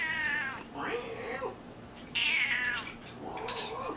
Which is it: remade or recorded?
remade